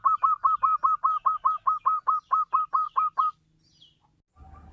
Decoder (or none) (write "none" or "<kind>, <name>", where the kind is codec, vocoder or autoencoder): none